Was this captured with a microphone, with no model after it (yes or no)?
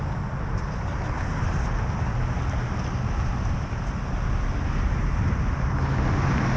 yes